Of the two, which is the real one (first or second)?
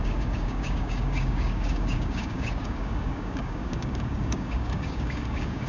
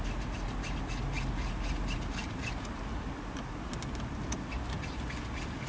second